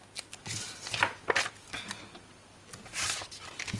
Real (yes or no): yes